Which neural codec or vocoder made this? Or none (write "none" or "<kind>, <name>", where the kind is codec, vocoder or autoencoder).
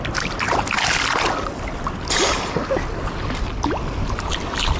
none